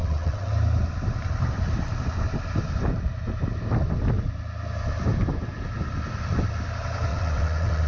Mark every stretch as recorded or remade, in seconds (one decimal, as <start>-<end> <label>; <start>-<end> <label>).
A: 0.0-0.5 remade; 0.5-7.1 recorded; 7.1-7.9 remade